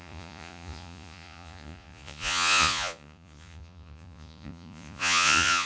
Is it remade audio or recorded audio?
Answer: remade